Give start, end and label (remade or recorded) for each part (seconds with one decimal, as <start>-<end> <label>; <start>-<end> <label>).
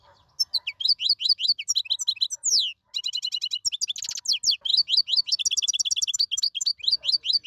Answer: 0.0-7.5 recorded